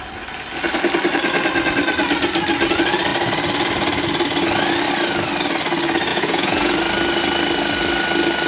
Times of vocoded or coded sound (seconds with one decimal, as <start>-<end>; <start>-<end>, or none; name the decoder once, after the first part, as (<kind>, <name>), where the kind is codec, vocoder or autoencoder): 6.1-6.7 (vocoder, Vocos)